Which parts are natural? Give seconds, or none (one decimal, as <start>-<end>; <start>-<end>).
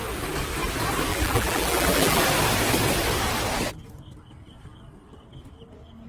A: 0.0-1.1; 2.2-6.1